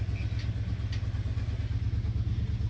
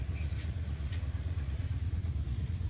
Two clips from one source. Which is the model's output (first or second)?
second